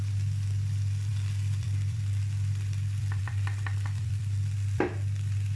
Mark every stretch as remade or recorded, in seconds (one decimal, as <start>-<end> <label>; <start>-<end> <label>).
0.0-5.6 remade